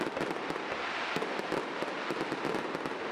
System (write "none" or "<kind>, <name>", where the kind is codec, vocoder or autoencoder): none